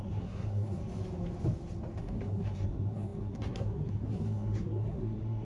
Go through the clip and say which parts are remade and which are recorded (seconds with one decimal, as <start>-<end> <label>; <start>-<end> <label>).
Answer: 0.0-0.8 remade; 0.8-2.0 recorded; 2.0-5.4 remade